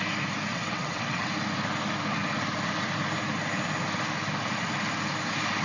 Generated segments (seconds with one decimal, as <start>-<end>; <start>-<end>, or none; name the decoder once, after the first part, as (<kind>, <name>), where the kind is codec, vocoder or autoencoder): 0.5-1.3 (vocoder, WaveNeXt)